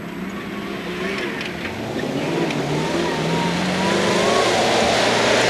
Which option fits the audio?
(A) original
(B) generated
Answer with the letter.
A